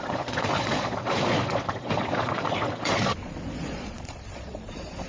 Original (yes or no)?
no